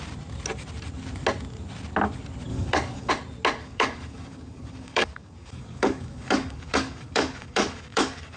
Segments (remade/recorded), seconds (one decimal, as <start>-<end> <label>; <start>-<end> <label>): 0.0-2.5 recorded; 2.5-3.1 remade; 3.1-3.6 recorded; 3.6-8.4 remade